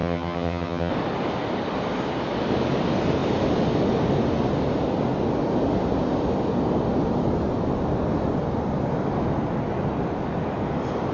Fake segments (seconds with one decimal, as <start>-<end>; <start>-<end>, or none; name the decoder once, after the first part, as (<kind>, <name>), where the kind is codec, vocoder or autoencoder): 0.0-0.9 (vocoder, HiFi-GAN)